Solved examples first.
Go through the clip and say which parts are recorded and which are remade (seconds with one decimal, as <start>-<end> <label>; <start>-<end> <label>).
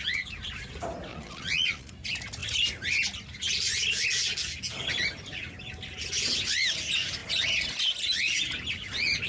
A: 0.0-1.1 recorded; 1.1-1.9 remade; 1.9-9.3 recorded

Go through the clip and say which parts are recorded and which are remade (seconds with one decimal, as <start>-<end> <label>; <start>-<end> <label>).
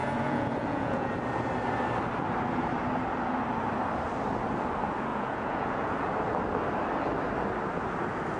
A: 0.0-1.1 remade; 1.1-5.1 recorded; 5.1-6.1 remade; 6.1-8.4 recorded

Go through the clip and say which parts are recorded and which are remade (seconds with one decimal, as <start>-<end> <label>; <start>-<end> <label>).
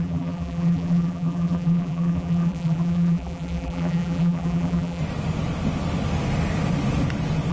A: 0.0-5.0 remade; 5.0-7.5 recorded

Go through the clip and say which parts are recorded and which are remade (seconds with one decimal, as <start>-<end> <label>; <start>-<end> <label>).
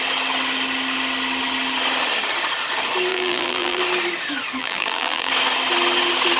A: 0.0-3.1 recorded; 3.1-3.8 remade; 3.8-4.6 recorded; 4.6-5.3 remade; 5.3-6.4 recorded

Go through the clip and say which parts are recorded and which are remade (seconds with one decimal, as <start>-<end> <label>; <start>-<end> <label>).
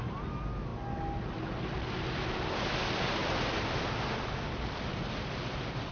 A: 0.0-5.9 recorded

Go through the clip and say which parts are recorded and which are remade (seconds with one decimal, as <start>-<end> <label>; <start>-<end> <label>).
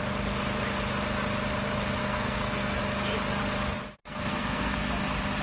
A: 0.0-2.0 recorded; 2.0-2.8 remade; 2.8-4.0 recorded; 4.0-4.8 remade; 4.8-5.4 recorded